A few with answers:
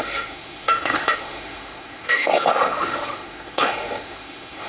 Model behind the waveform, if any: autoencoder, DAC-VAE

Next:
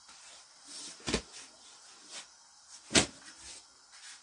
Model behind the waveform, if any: vocoder, BigVGAN v2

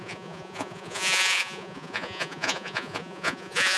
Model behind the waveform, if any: vocoder, Vocos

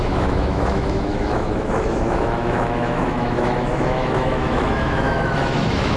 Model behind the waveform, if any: autoencoder, DAC-VAE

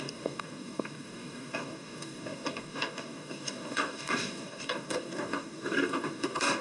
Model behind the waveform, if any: codec, DAC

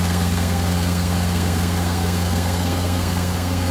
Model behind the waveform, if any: codec, SNAC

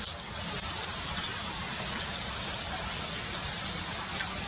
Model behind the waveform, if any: none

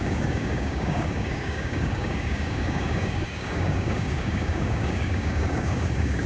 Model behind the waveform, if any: codec, DAC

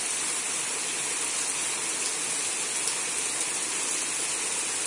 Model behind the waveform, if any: none